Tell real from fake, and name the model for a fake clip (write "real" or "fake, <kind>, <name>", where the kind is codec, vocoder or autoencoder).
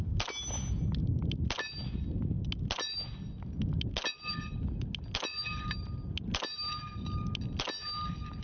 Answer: real